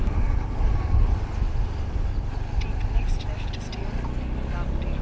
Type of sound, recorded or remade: recorded